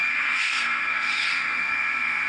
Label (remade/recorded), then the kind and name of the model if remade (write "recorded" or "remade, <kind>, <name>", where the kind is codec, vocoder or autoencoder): remade, codec, SNAC